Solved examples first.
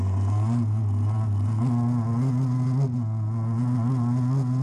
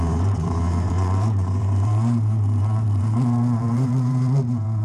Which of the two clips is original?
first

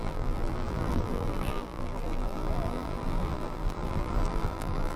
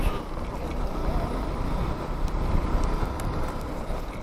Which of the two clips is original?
second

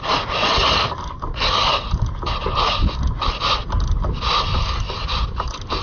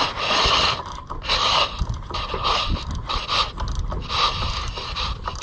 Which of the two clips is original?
first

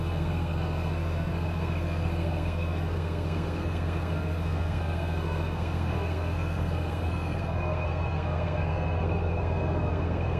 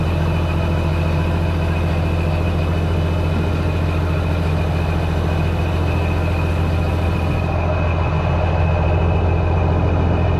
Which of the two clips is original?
second